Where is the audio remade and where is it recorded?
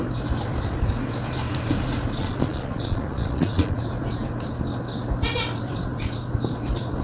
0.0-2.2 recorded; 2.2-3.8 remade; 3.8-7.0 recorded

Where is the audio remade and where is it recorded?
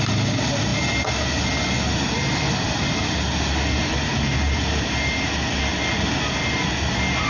0.0-7.3 recorded